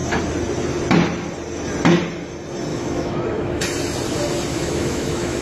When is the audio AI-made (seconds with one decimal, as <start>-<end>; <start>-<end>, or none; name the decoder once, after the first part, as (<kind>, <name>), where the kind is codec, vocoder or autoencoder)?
2.7-3.6 (autoencoder, DAC-VAE); 4.5-5.4